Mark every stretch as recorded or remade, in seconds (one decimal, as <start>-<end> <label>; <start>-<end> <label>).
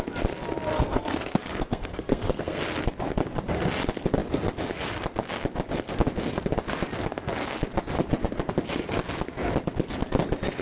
0.0-0.7 recorded; 0.7-2.6 remade; 2.6-10.6 recorded